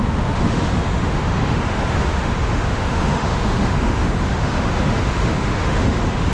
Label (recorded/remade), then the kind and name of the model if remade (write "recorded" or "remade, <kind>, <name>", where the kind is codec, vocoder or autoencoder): remade, autoencoder, DAC-VAE